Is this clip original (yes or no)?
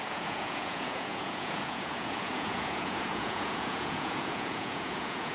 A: no